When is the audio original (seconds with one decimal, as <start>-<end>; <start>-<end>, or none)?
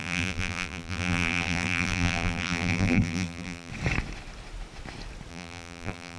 3.7-5.3